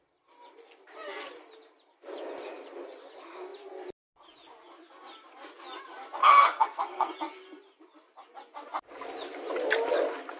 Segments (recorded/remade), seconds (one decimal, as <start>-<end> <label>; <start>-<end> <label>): 0.0-6.2 recorded; 6.2-7.1 remade; 7.1-10.4 recorded